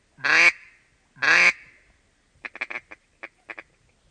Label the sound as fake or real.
real